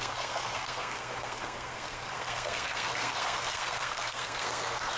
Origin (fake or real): fake